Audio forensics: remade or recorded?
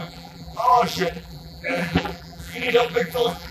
remade